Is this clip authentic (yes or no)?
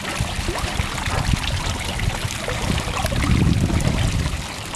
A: yes